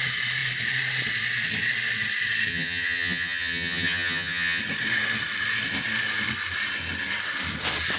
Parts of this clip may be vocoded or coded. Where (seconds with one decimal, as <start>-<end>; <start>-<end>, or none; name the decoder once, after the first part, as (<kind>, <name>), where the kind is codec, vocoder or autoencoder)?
2.5-4.6 (vocoder, HiFi-GAN)